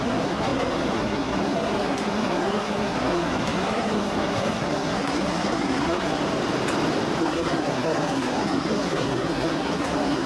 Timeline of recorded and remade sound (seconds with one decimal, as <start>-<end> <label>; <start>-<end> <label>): 0.0-6.2 remade; 6.2-7.2 recorded; 7.2-10.3 remade